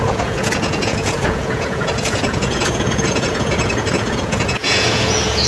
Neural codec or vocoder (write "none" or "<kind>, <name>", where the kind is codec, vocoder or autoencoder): vocoder, Vocos